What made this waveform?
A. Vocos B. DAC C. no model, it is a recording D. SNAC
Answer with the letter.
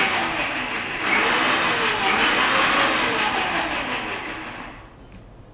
C